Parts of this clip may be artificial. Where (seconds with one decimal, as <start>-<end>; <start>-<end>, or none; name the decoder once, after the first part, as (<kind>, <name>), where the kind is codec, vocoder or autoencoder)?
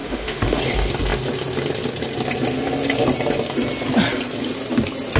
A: 0.0-0.6 (autoencoder, DAC-VAE)